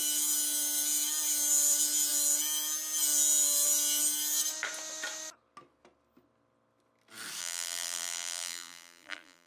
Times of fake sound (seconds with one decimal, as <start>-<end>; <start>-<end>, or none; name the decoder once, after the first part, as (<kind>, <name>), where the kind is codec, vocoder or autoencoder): 7.4-9.5 (vocoder, BigVGAN v2)